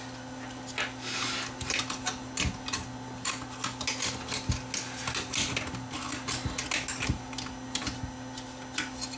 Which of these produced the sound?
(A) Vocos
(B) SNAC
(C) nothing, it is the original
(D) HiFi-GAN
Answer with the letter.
C